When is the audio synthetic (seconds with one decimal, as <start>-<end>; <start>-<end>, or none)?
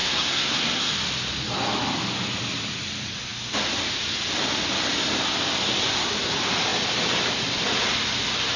0.0-0.9